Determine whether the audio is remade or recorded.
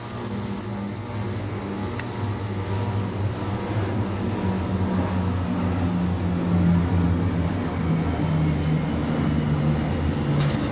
recorded